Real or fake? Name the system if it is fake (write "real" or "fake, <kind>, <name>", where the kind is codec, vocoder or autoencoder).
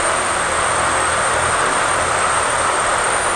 real